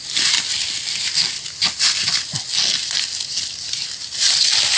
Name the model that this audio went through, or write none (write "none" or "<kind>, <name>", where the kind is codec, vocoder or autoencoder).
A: none